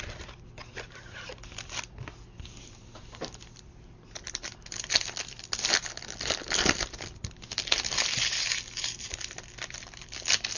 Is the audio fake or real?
fake